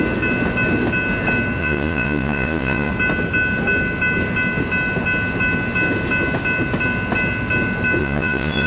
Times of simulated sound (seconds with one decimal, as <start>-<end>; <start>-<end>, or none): 1.6-2.9; 8.0-8.7